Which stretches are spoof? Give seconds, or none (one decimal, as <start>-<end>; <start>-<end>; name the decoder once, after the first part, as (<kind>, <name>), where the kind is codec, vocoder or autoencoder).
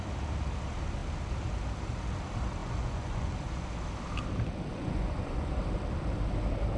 2.6-3.7 (vocoder, Vocos); 4.7-5.6